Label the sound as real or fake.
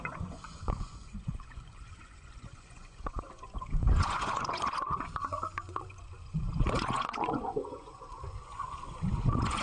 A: fake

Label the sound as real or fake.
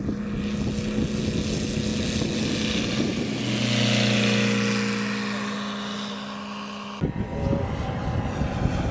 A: real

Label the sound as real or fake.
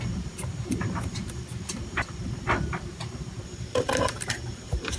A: fake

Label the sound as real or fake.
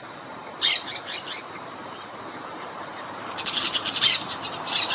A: fake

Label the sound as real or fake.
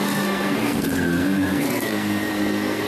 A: fake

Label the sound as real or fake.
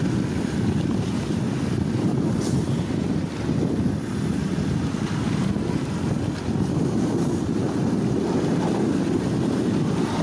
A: real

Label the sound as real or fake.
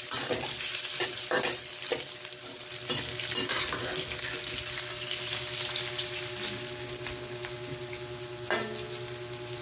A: real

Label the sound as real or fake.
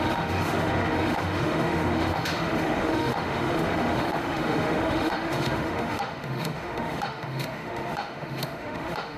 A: fake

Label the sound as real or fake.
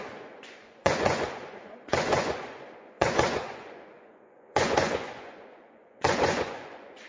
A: fake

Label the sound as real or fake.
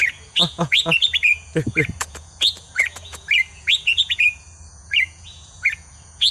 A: fake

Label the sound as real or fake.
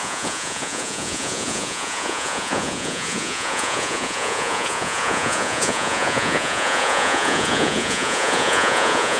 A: fake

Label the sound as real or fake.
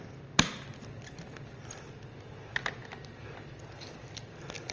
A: real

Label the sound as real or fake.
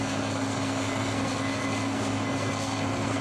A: fake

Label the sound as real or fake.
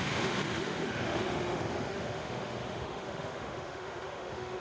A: fake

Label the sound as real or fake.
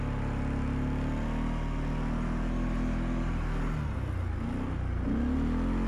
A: real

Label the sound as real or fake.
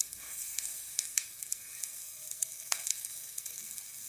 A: fake